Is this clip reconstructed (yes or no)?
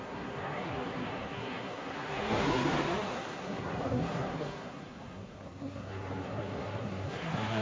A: yes